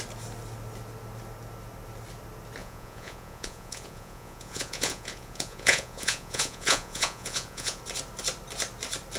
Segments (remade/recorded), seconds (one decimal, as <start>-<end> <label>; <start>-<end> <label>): 0.0-2.6 recorded; 2.6-7.8 remade; 7.8-9.2 recorded